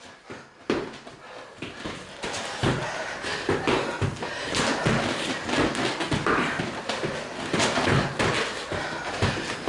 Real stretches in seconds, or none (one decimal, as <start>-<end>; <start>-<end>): 0.0-9.7